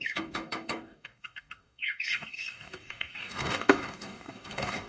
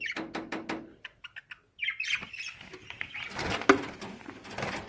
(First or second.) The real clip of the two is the second